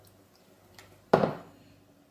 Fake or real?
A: real